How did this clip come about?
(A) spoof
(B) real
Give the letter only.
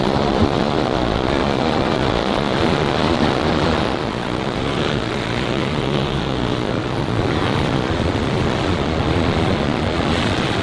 A